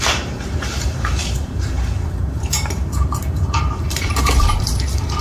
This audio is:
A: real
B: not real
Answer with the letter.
B